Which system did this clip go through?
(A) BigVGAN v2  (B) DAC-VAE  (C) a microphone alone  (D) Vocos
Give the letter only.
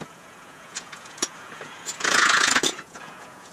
D